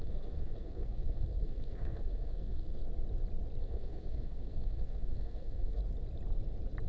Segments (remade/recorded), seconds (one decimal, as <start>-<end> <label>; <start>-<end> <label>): 0.0-2.8 remade; 2.8-3.6 recorded; 3.6-5.8 remade; 5.8-6.9 recorded